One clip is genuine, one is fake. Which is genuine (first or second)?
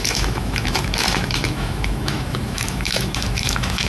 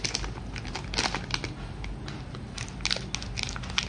second